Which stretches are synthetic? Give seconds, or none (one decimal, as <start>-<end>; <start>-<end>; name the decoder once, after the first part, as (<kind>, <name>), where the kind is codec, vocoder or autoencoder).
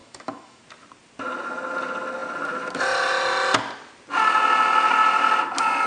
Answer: 0.0-0.6 (autoencoder, DAC-VAE)